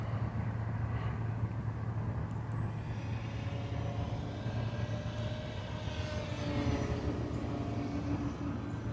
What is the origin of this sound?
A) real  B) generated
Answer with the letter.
A